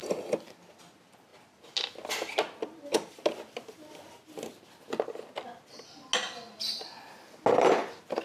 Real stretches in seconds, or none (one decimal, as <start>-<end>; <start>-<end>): 0.0-8.2